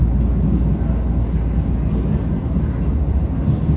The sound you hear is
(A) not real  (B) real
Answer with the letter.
B